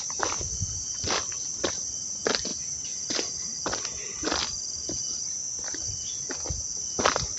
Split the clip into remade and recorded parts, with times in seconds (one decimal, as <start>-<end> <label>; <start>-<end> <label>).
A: 0.0-7.4 recorded